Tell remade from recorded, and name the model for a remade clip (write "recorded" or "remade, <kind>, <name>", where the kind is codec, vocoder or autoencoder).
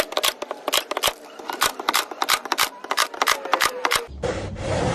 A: recorded